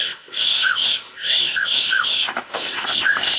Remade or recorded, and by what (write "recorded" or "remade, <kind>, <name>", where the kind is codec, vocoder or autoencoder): remade, codec, ZipCodec